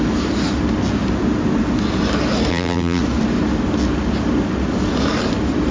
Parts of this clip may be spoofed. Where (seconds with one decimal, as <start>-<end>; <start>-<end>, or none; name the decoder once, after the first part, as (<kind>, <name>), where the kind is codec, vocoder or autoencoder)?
2.5-3.0 (vocoder, BigVGAN v2)